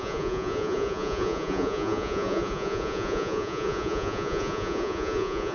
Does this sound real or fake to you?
fake